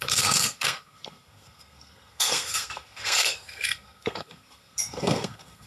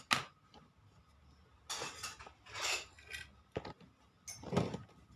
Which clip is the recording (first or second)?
second